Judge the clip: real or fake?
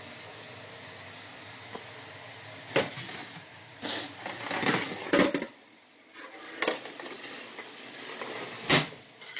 real